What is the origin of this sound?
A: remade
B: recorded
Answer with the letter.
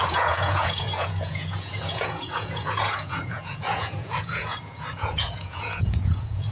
A